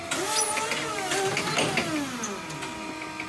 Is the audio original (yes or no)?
yes